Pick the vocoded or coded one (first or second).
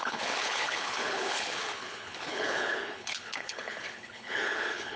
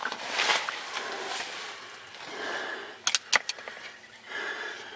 first